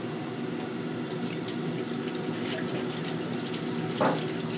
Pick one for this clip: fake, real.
real